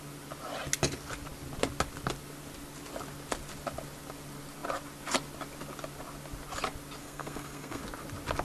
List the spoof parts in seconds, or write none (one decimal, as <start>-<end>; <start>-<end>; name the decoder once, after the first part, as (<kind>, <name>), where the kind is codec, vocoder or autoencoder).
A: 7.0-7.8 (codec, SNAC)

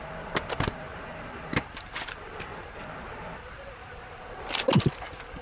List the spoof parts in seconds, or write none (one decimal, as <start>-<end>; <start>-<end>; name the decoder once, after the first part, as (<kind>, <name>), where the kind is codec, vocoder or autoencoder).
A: none

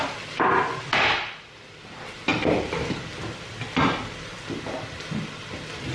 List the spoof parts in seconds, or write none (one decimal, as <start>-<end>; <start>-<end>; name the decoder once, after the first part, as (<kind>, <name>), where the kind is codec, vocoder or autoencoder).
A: none

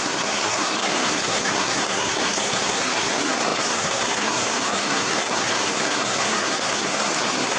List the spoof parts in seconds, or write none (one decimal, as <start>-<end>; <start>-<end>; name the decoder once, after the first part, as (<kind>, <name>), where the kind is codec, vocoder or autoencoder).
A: 0.0-7.6 (codec, SNAC)

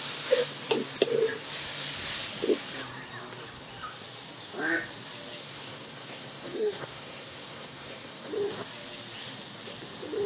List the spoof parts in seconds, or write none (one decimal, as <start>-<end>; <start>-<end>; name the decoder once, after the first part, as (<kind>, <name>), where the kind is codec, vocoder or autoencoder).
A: 5.4-8.3 (codec, SNAC)